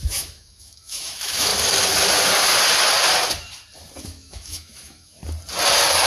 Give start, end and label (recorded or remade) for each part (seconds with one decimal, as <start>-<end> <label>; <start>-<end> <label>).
0.0-1.5 remade; 1.5-4.0 recorded; 4.0-5.2 remade; 5.2-6.1 recorded